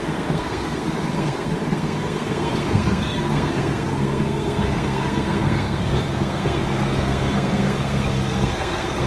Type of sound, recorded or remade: remade